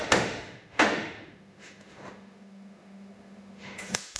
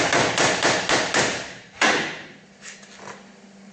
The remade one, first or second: first